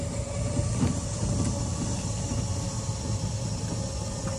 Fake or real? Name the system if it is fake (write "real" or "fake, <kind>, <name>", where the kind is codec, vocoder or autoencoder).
real